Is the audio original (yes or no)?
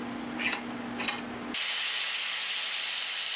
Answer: yes